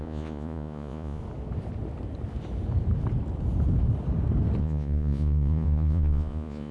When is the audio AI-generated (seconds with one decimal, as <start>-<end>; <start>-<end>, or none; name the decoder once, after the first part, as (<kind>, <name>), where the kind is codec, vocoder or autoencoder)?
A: 0.0-1.2 (vocoder, Vocos); 4.6-6.7